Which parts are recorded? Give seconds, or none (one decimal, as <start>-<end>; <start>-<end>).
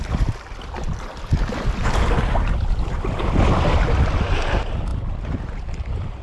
4.9-5.6